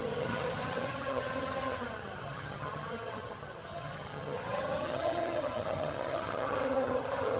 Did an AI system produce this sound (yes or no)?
yes